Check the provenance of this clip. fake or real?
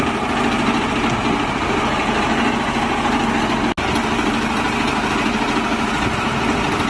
real